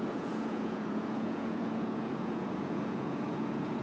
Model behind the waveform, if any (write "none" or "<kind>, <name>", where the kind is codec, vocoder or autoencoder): vocoder, Vocos